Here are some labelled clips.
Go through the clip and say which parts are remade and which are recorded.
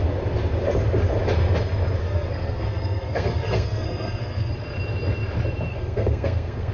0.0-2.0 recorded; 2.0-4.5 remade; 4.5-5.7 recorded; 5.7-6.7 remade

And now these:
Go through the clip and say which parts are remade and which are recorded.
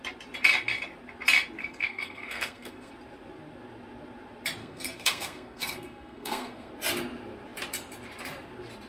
0.0-1.6 recorded; 1.6-2.9 remade; 2.9-4.6 recorded; 4.6-6.7 remade; 6.7-8.9 recorded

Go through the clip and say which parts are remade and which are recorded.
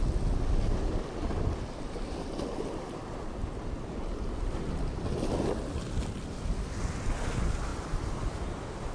0.0-8.9 recorded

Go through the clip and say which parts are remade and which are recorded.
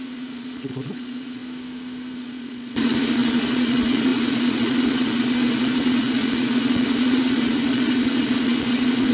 0.0-1.4 remade; 1.4-2.2 recorded; 2.2-9.1 remade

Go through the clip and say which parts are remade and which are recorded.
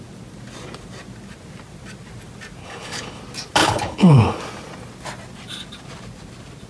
0.0-2.6 recorded; 2.6-3.2 remade; 3.2-3.6 recorded; 3.6-4.4 remade; 4.4-6.7 recorded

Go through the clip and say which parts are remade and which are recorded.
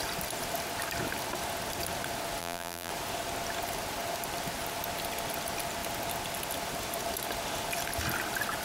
0.0-2.4 recorded; 2.4-2.9 remade; 2.9-8.6 recorded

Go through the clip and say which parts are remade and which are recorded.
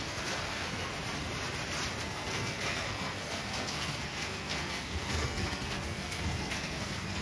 0.0-0.9 remade; 0.9-2.0 recorded; 2.0-7.2 remade